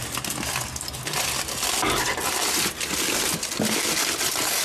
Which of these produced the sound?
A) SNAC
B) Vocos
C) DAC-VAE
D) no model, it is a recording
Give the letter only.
D